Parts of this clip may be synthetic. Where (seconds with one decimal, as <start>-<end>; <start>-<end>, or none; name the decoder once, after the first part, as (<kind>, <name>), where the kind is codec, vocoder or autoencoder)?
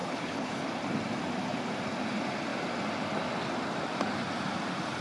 0.0-0.7 (codec, HILCodec)